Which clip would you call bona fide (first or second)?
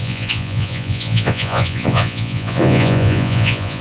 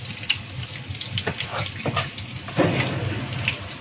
second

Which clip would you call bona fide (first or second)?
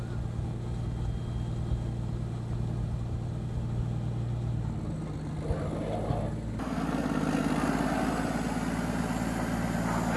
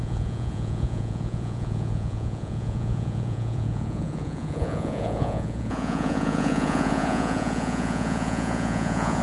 first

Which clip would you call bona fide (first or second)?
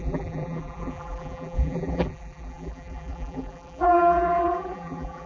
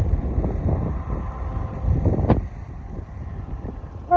second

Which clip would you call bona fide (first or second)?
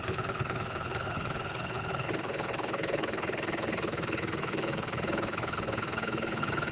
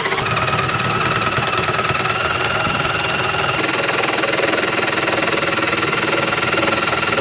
second